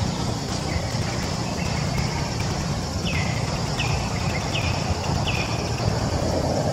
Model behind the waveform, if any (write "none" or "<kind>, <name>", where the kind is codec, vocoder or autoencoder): none